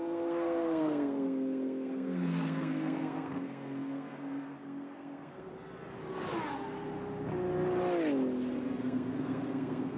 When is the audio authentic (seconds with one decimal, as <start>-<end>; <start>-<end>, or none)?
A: 5.5-8.7